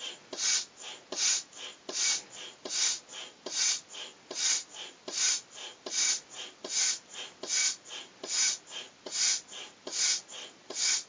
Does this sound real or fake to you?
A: real